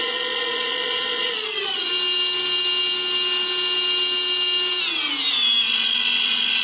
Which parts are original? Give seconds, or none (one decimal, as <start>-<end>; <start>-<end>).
1.9-5.7